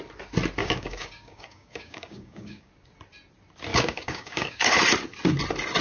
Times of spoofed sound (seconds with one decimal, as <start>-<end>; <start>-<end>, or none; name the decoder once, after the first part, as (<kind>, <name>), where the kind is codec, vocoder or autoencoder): 0.6-2.7 (codec, DAC); 3.7-4.6